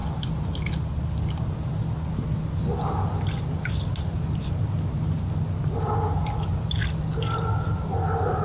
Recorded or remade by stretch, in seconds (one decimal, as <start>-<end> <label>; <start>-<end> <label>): 0.0-8.4 recorded